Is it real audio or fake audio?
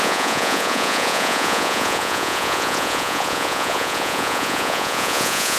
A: fake